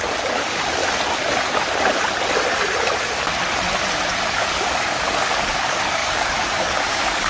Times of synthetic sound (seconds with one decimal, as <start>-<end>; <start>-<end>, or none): 0.0-0.8; 4.3-7.3